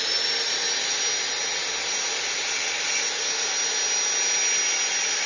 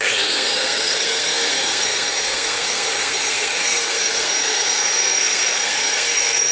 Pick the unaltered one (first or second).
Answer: first